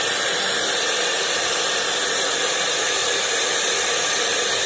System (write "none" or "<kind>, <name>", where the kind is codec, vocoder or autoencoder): vocoder, BigVGAN v2